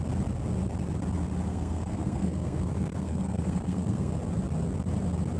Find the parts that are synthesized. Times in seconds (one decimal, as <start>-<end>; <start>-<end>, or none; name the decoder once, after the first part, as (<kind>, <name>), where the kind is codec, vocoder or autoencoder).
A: 1.5-4.1 (codec, SNAC)